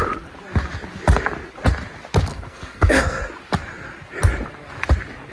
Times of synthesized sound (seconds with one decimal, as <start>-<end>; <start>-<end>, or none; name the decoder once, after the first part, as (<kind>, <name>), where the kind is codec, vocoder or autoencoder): 2.3-3.2 (codec, SNAC)

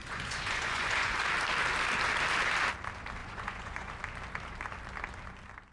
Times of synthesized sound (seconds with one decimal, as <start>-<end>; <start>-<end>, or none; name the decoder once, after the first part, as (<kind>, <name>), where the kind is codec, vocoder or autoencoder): 0.0-1.2 (vocoder, Vocos); 3.2-3.9

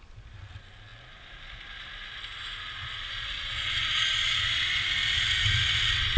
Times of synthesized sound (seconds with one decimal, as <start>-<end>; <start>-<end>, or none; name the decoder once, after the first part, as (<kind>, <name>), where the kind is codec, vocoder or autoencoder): none

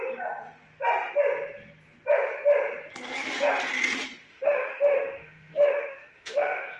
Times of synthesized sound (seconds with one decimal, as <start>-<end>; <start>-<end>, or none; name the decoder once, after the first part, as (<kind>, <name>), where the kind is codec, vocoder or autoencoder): 4.3-6.8 (autoencoder, DAC-VAE)

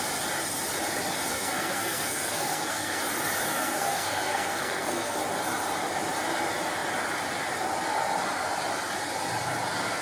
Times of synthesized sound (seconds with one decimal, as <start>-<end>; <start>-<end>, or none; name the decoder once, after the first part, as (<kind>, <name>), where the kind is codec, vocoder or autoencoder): 1.3-3.0 (codec, SNAC); 3.5-5.2